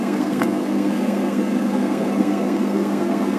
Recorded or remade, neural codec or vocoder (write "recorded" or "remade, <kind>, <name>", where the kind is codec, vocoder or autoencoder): remade, codec, SNAC